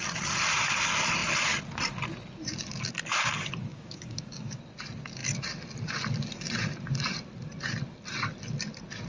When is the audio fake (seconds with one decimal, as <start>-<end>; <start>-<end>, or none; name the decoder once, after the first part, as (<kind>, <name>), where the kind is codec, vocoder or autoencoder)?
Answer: 3.7-4.6 (codec, DAC)